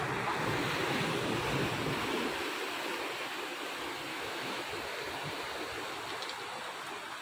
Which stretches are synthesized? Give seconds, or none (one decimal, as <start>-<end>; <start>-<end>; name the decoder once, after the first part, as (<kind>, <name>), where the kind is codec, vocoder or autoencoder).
4.1-4.6 (autoencoder, DAC-VAE)